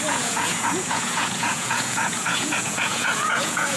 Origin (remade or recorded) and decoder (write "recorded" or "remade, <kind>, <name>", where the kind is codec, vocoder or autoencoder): remade, vocoder, Vocos